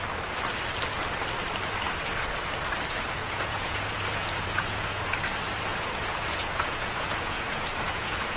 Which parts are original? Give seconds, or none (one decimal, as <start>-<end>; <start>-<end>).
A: 0.0-3.2; 5.1-5.7